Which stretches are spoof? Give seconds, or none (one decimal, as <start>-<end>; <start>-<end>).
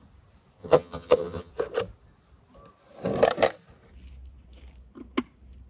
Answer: 0.6-1.5